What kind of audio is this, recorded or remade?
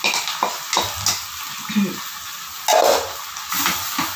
recorded